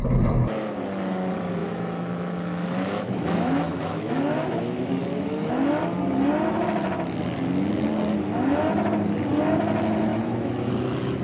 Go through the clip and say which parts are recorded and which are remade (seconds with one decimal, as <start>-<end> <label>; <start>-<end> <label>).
0.0-1.6 recorded; 1.6-5.5 remade; 5.5-10.1 recorded; 10.1-10.7 remade; 10.7-11.2 recorded